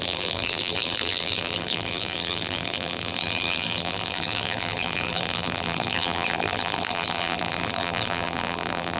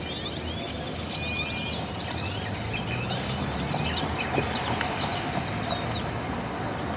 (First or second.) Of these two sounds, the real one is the second